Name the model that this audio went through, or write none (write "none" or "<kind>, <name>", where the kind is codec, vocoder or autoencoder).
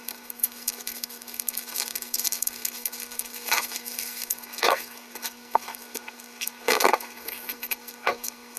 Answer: codec, SNAC